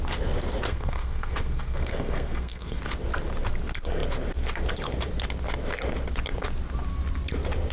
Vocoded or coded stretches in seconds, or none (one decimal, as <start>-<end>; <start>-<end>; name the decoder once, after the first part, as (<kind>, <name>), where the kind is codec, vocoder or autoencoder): 0.7-2.8 (codec, SNAC)